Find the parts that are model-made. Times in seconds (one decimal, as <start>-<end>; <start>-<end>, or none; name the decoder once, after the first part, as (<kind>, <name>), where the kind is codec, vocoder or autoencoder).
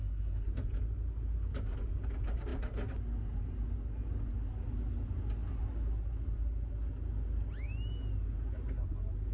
0.0-0.5 (codec, SNAC)